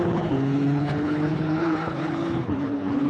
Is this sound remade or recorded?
remade